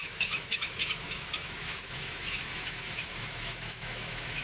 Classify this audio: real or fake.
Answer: fake